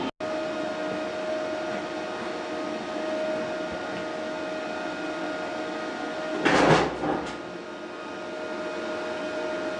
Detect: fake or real real